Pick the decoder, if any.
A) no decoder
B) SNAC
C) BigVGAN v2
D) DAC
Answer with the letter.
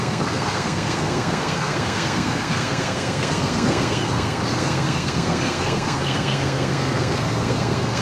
B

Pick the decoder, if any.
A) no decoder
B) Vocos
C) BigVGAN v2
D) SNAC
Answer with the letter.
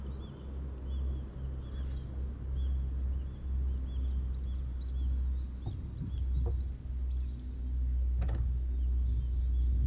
A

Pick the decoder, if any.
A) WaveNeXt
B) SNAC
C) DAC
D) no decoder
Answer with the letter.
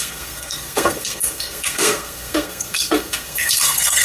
B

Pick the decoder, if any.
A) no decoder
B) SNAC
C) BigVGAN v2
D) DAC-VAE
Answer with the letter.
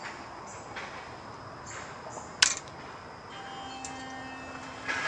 A